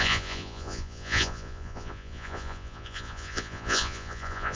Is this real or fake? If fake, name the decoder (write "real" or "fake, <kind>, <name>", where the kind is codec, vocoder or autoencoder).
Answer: fake, vocoder, Vocos